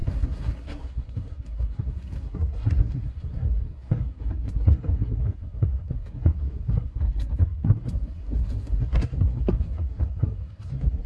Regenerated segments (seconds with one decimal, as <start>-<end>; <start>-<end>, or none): 0.0-11.1